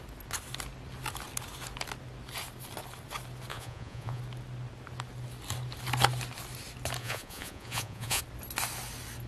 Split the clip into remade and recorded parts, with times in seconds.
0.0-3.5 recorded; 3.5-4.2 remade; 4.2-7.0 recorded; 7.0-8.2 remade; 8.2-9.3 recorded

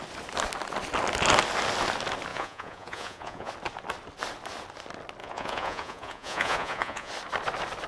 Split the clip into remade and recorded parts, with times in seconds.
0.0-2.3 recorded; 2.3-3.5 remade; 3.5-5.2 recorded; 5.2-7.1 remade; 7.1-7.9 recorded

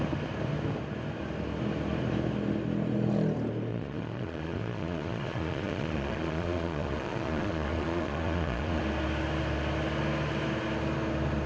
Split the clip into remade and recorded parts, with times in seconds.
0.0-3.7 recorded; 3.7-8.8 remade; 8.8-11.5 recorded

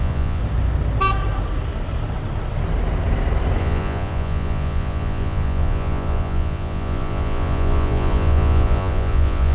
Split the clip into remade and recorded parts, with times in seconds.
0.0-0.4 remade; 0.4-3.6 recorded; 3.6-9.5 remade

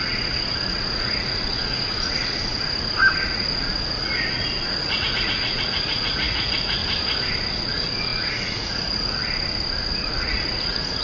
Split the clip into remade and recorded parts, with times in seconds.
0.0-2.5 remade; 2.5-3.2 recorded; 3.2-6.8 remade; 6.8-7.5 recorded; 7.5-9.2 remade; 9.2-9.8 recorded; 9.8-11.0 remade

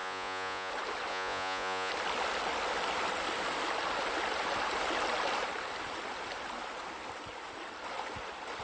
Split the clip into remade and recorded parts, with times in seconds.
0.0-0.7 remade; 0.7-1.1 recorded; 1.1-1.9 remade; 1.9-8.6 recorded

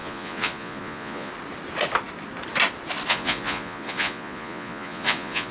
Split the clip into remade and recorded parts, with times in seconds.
0.0-1.3 remade; 1.3-3.1 recorded; 3.1-5.5 remade

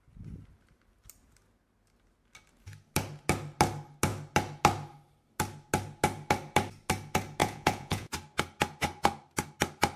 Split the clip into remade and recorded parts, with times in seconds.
0.0-7.4 recorded; 7.4-8.1 remade; 8.1-10.0 recorded